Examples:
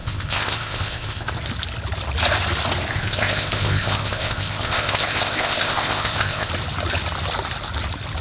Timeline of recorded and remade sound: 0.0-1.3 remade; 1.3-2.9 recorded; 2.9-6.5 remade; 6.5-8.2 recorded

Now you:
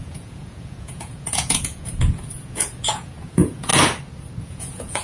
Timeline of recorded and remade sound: 0.0-3.7 remade; 3.7-4.4 recorded; 4.4-5.0 remade

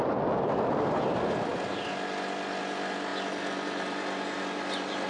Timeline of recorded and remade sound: 0.0-5.1 recorded

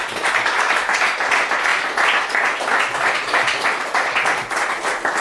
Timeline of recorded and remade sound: 0.0-5.2 recorded

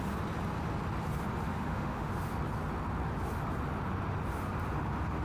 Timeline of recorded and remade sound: 0.0-1.5 recorded; 1.5-2.1 remade; 2.1-5.2 recorded